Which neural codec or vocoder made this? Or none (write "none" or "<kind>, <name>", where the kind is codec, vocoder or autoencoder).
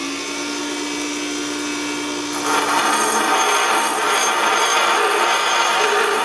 none